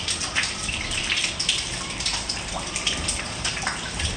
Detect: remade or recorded remade